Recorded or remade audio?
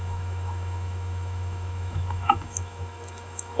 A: remade